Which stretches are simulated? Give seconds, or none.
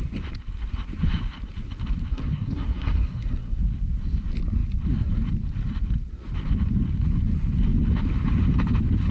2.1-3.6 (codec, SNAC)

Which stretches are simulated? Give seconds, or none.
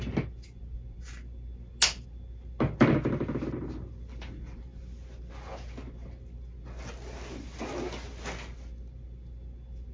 none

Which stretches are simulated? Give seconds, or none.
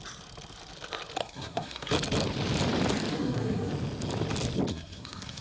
1.2-1.9 (codec, SNAC); 3.1-3.7; 4.7-5.4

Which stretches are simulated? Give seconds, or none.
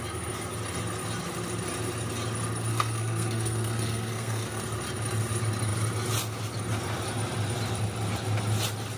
2.7-4.6 (codec, SNAC)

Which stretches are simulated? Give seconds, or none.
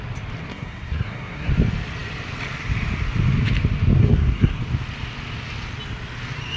0.5-1.5 (codec, SNAC); 4.0-4.6